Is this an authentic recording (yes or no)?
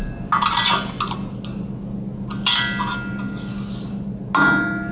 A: yes